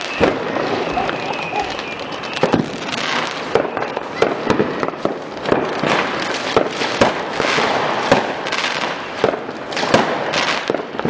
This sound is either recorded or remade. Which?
recorded